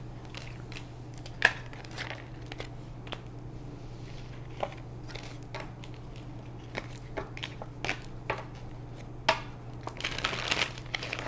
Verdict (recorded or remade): recorded